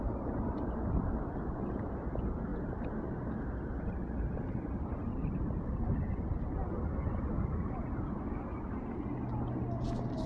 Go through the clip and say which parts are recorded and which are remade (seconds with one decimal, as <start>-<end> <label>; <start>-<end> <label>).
0.0-10.3 recorded